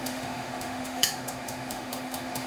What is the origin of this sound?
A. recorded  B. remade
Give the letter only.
B